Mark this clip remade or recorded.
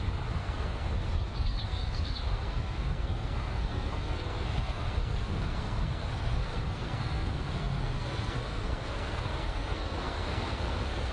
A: remade